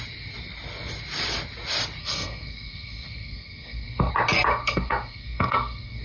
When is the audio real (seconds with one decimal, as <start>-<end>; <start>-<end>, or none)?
0.0-2.0; 4.1-4.5